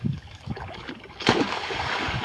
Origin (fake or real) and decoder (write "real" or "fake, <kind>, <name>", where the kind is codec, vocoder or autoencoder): fake, codec, DAC